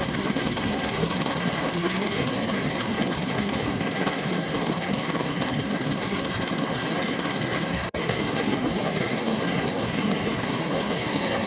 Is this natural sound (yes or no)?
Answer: no